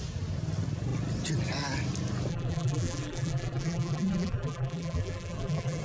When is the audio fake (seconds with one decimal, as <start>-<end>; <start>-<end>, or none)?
2.3-5.8